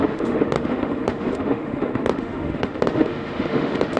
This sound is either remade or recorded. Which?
remade